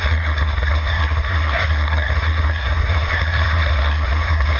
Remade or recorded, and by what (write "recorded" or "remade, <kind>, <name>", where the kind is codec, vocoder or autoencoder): remade, codec, SNAC